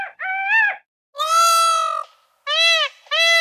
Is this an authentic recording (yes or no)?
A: yes